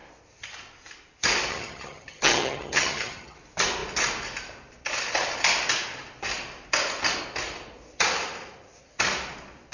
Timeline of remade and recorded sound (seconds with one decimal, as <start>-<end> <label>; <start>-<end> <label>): 0.0-1.5 recorded; 1.5-3.4 remade; 3.4-9.7 recorded